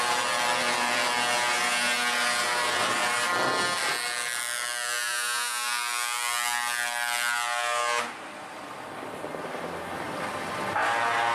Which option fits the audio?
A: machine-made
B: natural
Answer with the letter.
B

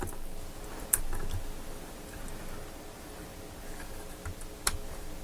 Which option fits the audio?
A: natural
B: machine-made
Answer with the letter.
A